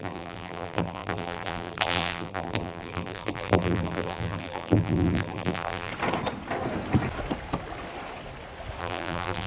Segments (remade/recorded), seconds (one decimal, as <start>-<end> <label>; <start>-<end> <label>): 0.0-5.9 remade; 5.9-8.8 recorded; 8.8-9.5 remade